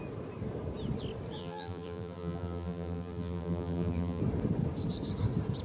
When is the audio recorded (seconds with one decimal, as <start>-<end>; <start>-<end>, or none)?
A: 0.0-1.4; 4.2-5.6